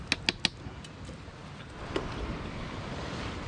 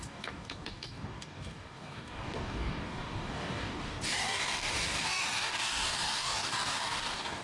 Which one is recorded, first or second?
first